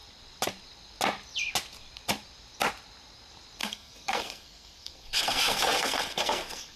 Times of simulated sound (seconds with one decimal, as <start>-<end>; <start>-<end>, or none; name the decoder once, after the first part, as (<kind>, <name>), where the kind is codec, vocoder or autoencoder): 3.6-6.8 (codec, SNAC)